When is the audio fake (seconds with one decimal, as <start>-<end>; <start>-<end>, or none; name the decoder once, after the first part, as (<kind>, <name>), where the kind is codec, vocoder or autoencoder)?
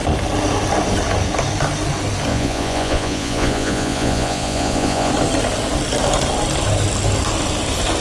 2.3-5.1 (vocoder, Vocos)